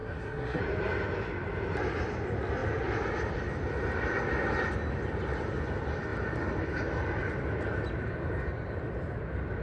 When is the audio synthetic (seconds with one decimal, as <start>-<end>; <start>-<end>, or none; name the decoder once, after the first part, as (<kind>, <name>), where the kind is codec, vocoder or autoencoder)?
0.0-0.6 (codec, SNAC)